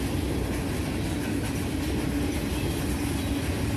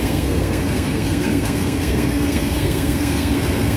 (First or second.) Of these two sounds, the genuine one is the first